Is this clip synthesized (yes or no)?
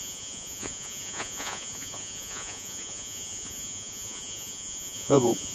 yes